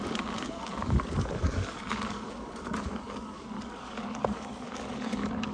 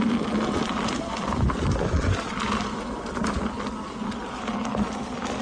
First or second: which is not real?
first